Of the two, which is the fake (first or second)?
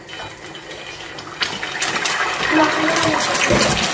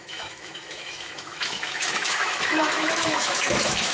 second